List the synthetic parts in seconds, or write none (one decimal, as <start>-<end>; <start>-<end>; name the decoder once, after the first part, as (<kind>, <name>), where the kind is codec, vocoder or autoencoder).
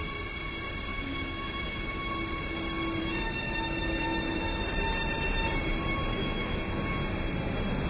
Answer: 0.9-2.1 (autoencoder, DAC-VAE); 3.0-4.6; 6.1-6.6